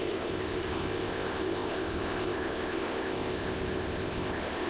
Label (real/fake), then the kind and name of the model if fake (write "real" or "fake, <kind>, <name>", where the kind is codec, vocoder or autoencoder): fake, codec, ZipCodec